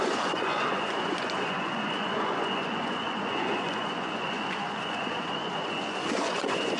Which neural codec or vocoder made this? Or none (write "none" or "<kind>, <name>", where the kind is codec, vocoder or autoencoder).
vocoder, Vocos